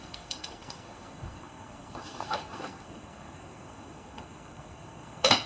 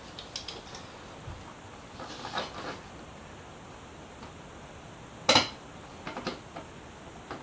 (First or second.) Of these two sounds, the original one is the second